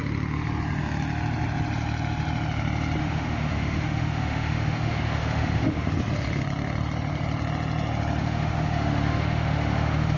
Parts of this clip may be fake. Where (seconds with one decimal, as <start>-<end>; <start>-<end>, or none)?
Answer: 3.0-5.9; 8.2-10.2